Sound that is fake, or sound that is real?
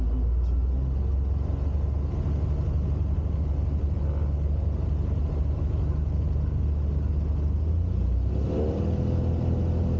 real